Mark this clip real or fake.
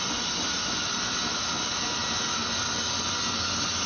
real